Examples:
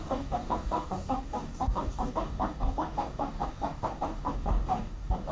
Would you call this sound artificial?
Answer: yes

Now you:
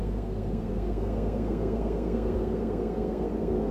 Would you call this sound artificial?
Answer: yes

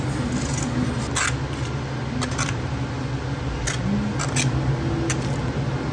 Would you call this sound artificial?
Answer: no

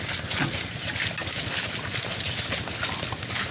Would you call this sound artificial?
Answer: no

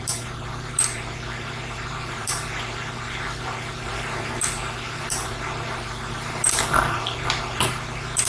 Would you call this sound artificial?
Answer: yes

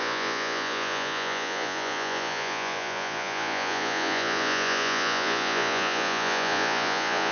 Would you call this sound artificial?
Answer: yes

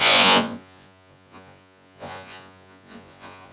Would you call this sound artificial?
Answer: yes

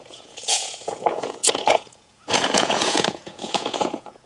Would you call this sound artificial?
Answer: yes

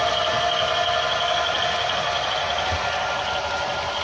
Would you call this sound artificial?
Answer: no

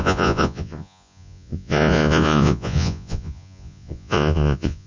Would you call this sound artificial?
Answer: yes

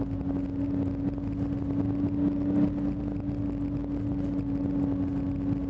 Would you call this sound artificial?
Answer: no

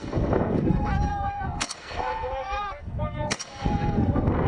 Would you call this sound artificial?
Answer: yes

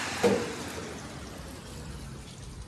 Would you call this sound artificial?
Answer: no